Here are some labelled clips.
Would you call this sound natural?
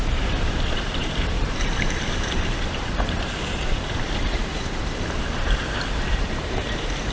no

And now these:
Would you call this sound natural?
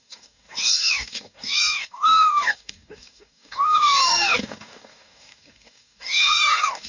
no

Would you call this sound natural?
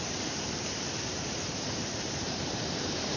no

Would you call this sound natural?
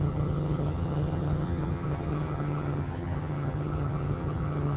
no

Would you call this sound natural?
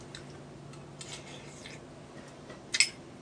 yes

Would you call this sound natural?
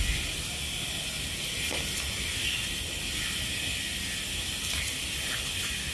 yes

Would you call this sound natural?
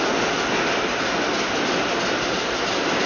yes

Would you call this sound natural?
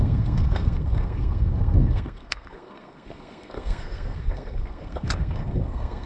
no